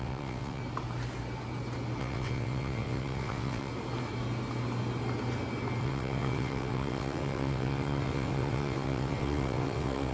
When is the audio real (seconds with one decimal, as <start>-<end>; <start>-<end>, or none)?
0.6-2.0; 3.7-5.8